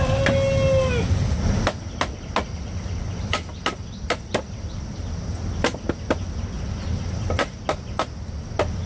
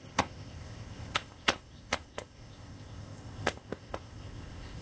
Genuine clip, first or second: first